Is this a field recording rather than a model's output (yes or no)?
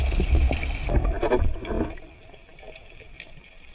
yes